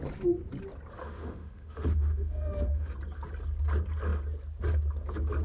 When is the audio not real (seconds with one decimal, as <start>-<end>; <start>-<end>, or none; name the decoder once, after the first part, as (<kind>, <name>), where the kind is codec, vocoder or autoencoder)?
1.0-2.9 (autoencoder, DAC-VAE)